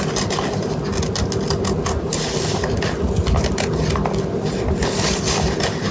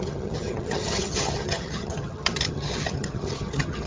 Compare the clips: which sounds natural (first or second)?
first